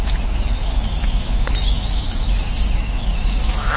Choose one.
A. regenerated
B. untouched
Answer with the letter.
A